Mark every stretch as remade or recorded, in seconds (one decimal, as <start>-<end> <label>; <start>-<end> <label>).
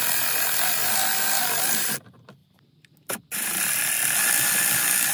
0.0-0.8 remade; 0.8-1.4 recorded; 1.4-2.4 remade; 2.4-4.3 recorded; 4.3-5.1 remade